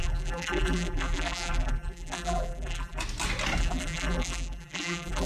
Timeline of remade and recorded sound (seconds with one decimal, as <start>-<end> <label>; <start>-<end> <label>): 0.0-3.0 remade; 3.0-3.6 recorded; 3.6-5.3 remade